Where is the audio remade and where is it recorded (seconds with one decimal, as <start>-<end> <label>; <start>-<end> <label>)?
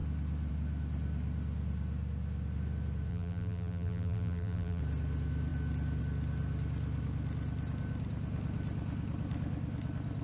0.0-3.1 recorded; 3.1-4.8 remade; 4.8-10.2 recorded